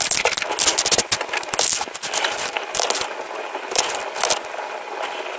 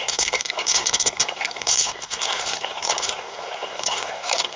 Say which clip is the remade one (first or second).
second